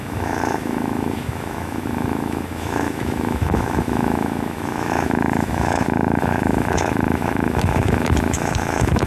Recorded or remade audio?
remade